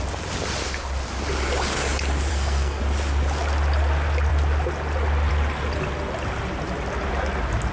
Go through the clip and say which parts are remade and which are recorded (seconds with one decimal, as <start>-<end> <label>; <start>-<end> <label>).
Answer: 0.0-2.3 recorded; 2.3-2.8 remade; 2.8-7.7 recorded